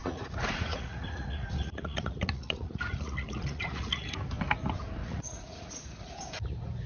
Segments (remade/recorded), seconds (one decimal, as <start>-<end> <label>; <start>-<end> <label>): 0.0-4.1 remade; 4.1-5.0 recorded; 5.0-6.3 remade; 6.3-6.9 recorded